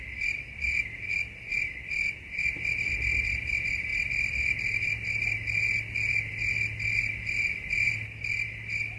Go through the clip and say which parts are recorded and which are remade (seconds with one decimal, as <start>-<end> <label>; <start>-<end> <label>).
0.0-9.0 recorded